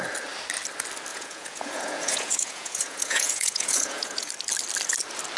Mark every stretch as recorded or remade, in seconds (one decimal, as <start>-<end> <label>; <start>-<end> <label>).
0.0-1.1 recorded; 1.1-4.3 remade; 4.3-5.4 recorded